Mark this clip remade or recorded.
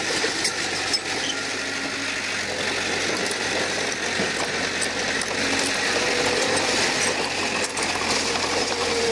recorded